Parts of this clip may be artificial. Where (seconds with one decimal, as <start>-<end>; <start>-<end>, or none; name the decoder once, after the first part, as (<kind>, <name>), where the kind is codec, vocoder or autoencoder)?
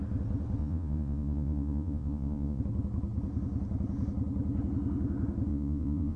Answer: 0.6-2.6 (vocoder, Vocos); 5.5-6.2